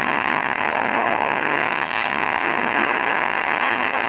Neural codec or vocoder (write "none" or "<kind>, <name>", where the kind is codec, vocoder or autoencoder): vocoder, HiFi-GAN